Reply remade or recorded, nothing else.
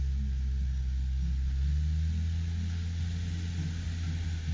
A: recorded